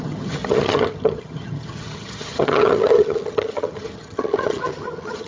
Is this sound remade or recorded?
remade